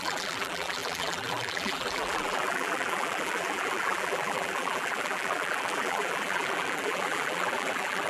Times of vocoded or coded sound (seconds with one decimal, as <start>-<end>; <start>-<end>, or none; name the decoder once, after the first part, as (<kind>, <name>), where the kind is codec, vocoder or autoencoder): 0.0-8.1 (vocoder, BigVGAN v2)